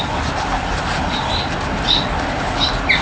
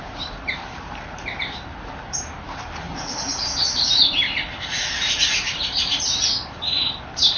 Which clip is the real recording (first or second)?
first